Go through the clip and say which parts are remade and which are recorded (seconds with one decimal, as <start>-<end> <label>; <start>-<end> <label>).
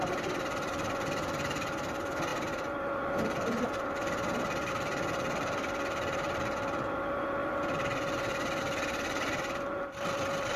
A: 0.0-10.6 recorded